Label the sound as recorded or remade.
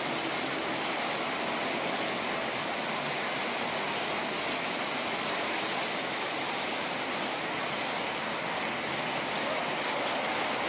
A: recorded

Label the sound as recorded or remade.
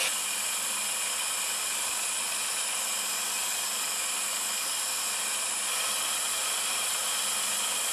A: recorded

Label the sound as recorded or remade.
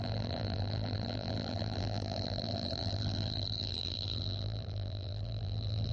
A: remade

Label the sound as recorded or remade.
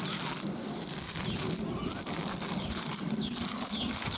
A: recorded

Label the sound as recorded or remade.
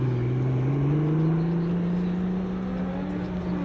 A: recorded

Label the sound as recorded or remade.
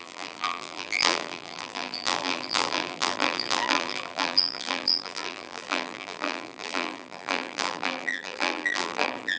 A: remade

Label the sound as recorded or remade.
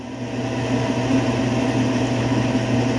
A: recorded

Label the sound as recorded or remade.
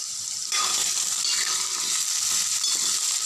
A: remade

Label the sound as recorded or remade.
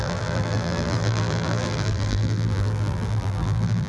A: remade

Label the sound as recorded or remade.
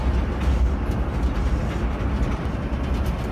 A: recorded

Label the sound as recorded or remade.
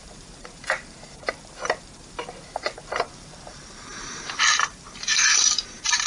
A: remade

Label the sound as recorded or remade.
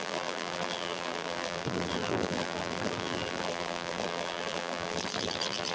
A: remade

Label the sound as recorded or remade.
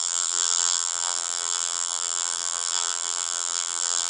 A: remade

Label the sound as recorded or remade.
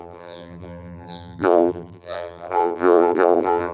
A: remade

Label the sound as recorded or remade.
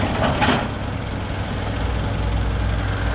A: recorded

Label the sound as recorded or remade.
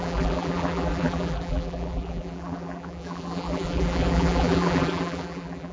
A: remade